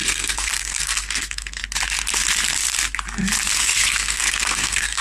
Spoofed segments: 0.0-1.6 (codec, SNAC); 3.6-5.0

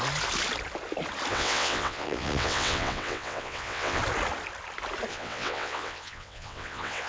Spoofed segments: 1.3-4.0 (vocoder, WaveNeXt); 5.1-7.1

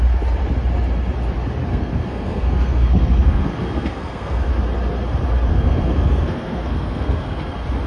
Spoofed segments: 1.7-4.5 (codec, SNAC); 5.5-7.5

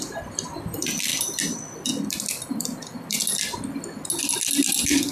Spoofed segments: none

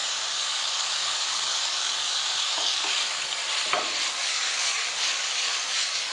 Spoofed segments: 0.0-3.4 (codec, DAC); 4.1-6.1

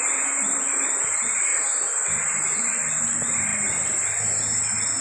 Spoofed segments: none

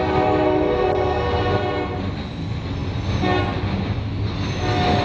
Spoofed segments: none

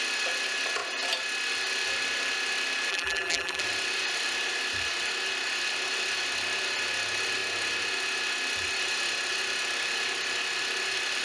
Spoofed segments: 2.9-3.6 (vocoder, BigVGAN v2)